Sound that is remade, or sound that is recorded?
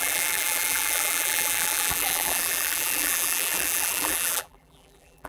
remade